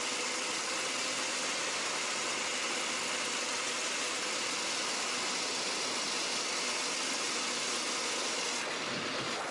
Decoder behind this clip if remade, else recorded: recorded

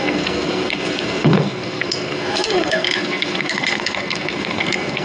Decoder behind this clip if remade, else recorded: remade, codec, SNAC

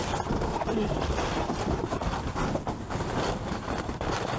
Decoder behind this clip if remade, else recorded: remade, vocoder, BigVGAN v2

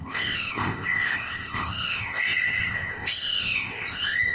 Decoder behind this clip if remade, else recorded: remade, codec, ZipCodec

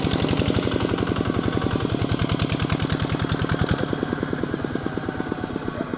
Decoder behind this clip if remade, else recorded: recorded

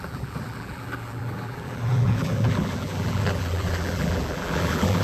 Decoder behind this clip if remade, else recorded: remade, vocoder, BigVGAN v2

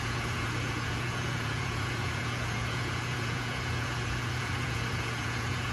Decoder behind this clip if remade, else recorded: remade, vocoder, Vocos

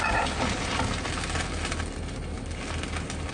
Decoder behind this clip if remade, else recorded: recorded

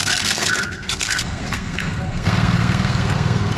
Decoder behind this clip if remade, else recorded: remade, codec, SNAC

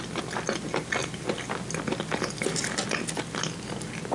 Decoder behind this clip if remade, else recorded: recorded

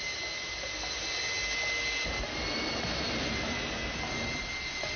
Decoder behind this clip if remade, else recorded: recorded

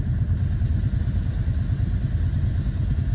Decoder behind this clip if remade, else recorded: recorded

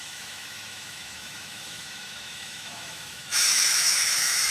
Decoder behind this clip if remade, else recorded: remade, autoencoder, DAC-VAE